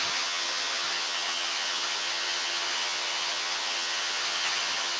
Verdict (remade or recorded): remade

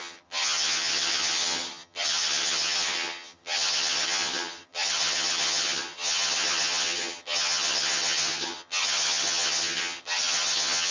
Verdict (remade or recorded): remade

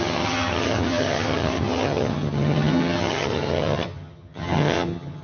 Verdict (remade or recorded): remade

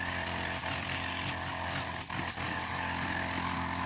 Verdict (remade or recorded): recorded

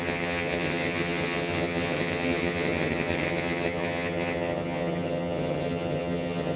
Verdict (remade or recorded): remade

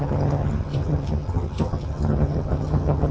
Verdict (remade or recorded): remade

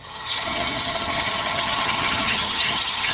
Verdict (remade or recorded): remade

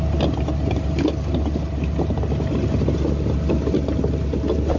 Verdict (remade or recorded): recorded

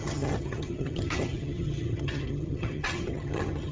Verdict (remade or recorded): remade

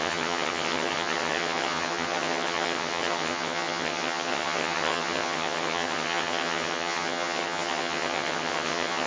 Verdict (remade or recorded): remade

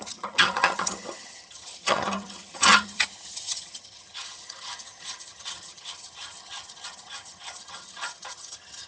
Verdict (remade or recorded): remade